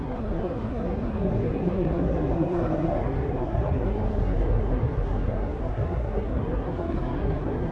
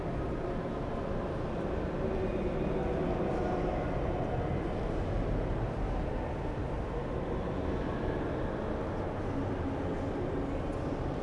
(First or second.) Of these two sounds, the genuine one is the second